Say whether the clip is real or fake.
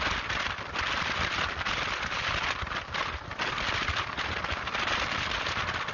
real